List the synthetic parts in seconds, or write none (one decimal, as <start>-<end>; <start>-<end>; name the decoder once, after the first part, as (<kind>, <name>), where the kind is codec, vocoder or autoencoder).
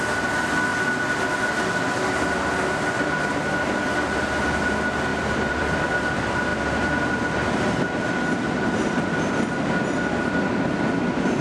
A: 0.7-1.3 (vocoder, BigVGAN v2); 5.1-5.8; 6.5-9.3